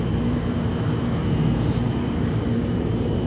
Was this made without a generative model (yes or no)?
no